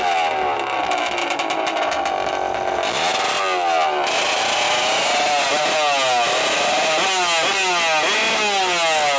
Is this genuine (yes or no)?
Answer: yes